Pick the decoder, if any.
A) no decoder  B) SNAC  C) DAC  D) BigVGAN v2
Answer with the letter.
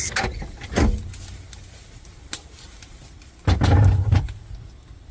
A